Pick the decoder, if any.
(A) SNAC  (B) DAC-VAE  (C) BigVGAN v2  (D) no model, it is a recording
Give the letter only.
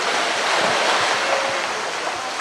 D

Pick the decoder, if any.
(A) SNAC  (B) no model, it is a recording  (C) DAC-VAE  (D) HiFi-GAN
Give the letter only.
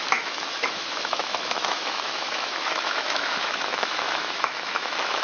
C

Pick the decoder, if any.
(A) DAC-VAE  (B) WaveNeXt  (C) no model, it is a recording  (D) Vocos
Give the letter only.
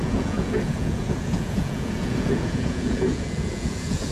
D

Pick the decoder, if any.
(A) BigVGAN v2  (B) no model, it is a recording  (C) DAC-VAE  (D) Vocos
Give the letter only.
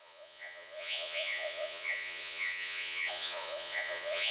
D